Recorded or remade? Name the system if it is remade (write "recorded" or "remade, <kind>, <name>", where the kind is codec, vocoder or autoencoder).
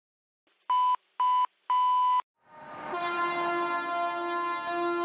recorded